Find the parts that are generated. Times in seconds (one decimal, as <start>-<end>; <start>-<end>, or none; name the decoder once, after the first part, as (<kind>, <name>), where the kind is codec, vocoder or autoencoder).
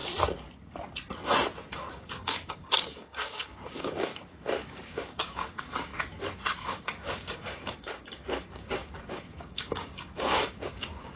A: 1.9-11.2 (codec, DAC)